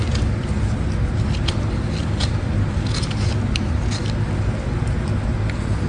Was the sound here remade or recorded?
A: recorded